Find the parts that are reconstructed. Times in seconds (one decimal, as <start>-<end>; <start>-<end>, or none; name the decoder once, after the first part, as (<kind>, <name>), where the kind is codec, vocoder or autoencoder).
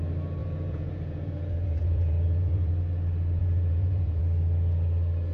0.4-2.7 (vocoder, Vocos); 3.4-4.2